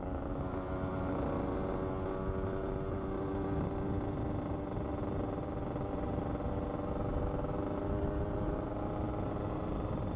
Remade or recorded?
recorded